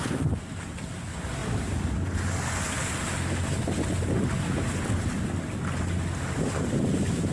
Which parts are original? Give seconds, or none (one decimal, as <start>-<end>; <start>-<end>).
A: 0.0-7.3

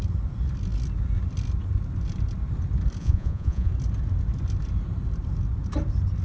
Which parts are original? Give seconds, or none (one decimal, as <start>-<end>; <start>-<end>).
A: 0.0-3.0; 3.7-6.2

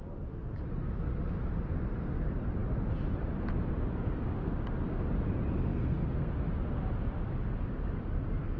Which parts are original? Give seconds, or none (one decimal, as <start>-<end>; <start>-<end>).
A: 0.0-5.7; 6.3-8.6

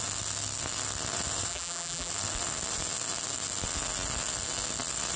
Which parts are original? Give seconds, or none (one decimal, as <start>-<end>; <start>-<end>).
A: 0.0-1.5; 2.1-5.2

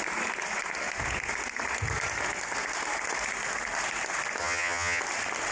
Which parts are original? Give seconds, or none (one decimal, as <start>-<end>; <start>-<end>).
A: 0.0-4.4; 5.0-5.5

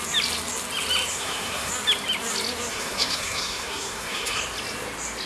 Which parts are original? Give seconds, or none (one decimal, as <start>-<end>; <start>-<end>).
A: 0.0-1.1; 1.7-2.7; 4.4-5.3